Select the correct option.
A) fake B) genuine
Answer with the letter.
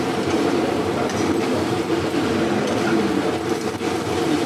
A